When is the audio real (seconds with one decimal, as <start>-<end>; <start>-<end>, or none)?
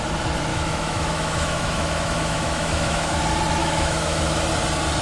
0.0-0.5; 3.2-3.6; 4.4-5.0